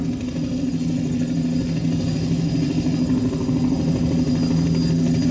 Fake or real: real